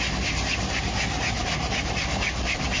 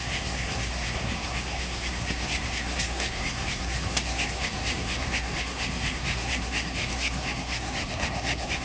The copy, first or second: second